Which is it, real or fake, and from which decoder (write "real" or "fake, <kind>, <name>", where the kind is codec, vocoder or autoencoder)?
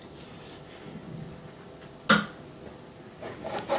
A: real